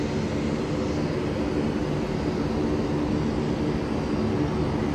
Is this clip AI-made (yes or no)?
no